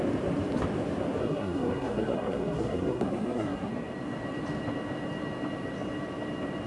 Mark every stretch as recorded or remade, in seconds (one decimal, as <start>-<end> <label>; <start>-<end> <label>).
0.0-1.2 recorded; 1.2-3.7 remade; 3.7-6.7 recorded